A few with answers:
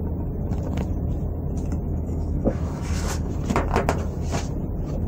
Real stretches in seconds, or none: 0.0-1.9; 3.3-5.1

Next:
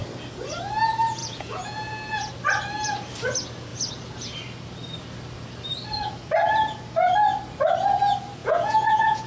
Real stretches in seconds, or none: 0.0-1.2; 2.3-8.4

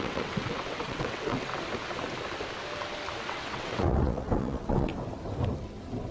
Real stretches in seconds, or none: 1.5-3.2; 4.9-6.1

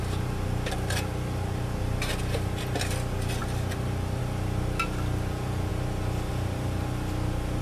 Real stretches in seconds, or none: 0.0-7.6

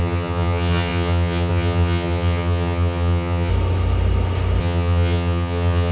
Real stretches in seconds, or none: 3.5-4.6

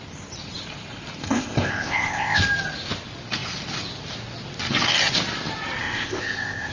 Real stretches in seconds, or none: 0.0-1.2; 2.4-5.8